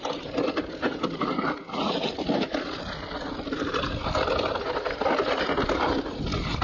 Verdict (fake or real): real